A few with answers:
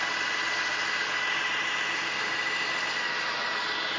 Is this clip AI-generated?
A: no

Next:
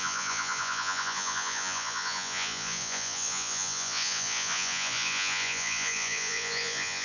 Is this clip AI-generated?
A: yes